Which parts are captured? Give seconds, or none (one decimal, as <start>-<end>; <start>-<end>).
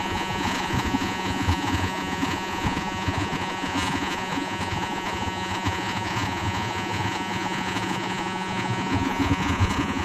none